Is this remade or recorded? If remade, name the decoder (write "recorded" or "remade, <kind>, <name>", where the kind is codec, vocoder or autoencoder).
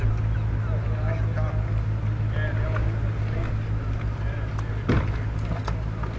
recorded